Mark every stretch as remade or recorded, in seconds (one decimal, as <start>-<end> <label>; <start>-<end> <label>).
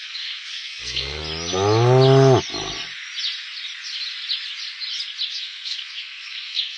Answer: 0.0-1.2 remade; 1.2-5.3 recorded; 5.3-6.8 remade